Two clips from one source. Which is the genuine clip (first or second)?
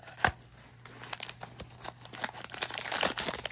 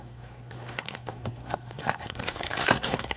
first